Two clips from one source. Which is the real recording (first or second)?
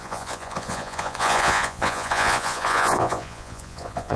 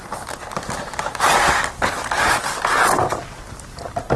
second